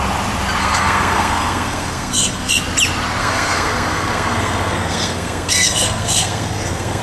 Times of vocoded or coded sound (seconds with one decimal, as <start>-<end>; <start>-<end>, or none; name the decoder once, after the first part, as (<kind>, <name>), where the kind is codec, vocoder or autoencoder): 0.6-2.5 (codec, SNAC); 3.2-7.0

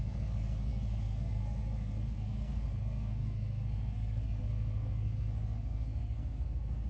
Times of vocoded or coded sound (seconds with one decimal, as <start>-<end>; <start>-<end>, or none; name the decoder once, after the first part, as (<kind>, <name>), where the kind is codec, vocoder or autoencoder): 0.0-6.9 (codec, SNAC)

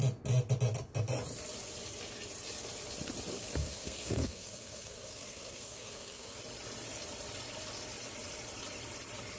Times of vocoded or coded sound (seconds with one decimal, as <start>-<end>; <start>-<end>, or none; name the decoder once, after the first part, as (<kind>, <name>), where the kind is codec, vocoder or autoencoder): 3.6-6.4 (codec, SNAC)

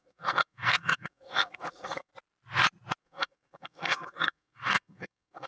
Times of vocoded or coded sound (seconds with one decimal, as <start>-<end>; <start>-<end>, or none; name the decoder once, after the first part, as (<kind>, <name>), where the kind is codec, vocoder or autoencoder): 0.0-2.1 (codec, SNAC); 3.0-5.5